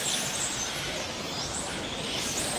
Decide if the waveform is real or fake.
real